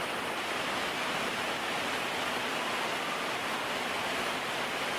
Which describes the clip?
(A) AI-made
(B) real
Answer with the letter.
B